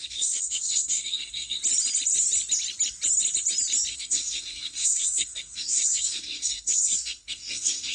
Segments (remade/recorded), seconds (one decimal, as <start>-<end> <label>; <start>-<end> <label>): 0.0-1.6 remade; 1.6-3.9 recorded; 3.9-7.9 remade